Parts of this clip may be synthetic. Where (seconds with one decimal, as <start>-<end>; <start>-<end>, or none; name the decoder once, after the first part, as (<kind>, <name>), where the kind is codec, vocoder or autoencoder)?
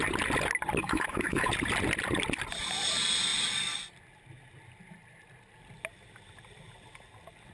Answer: 0.8-1.5 (autoencoder, DAC-VAE)